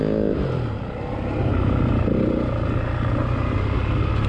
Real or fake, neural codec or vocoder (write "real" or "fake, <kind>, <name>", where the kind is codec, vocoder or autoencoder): real